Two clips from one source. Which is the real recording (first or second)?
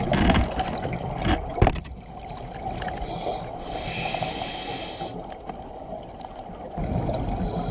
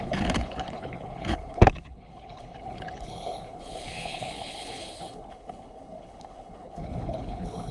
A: first